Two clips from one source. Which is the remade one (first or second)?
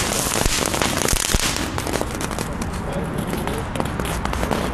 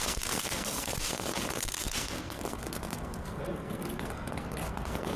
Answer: second